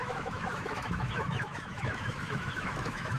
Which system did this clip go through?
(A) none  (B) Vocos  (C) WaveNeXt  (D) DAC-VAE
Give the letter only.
D